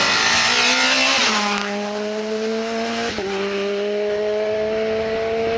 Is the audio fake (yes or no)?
no